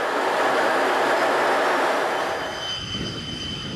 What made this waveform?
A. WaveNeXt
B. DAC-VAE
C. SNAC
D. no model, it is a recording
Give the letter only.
D